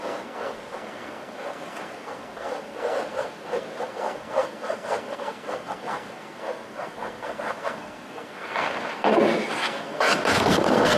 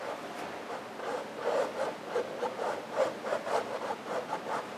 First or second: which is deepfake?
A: first